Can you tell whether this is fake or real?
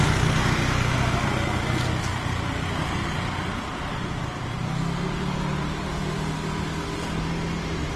real